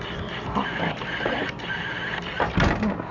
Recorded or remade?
recorded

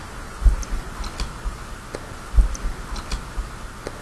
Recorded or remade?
recorded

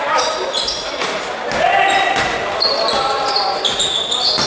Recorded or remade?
recorded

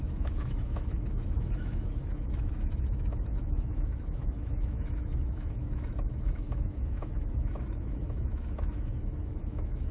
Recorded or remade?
remade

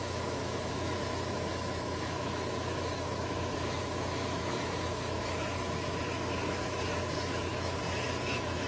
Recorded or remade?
remade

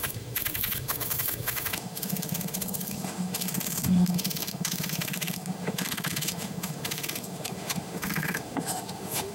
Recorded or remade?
remade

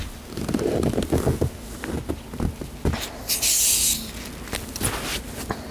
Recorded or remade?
recorded